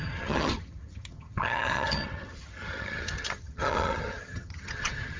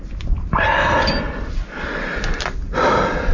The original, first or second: second